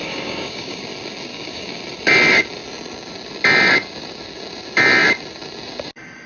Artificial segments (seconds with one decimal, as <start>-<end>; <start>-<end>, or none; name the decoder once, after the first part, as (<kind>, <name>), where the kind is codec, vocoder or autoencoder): 0.0-0.8 (codec, DAC); 1.3-1.8